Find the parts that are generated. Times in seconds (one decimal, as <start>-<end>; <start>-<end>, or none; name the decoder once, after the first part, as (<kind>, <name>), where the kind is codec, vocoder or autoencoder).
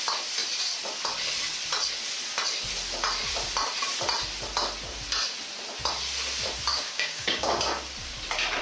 6.7-7.5 (codec, DAC)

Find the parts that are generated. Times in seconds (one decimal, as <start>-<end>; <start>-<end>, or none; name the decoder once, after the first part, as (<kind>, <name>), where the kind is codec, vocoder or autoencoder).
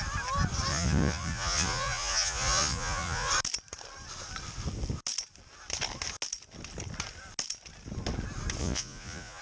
0.7-3.3 (vocoder, Vocos); 8.6-9.4